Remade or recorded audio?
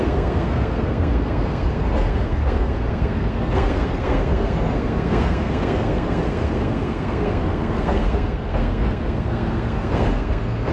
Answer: remade